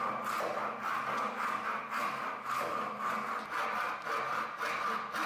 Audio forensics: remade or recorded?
recorded